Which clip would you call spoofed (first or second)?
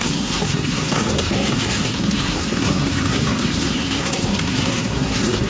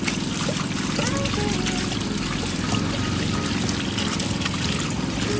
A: first